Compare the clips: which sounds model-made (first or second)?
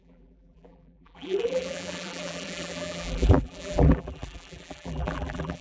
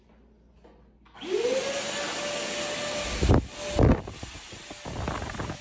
first